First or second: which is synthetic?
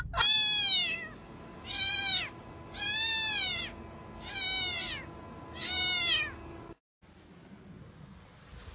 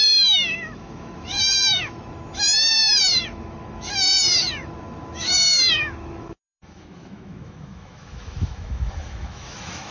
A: second